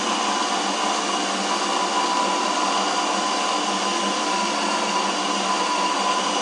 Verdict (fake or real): real